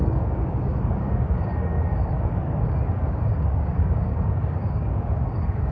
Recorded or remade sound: remade